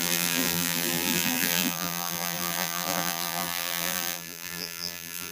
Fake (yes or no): yes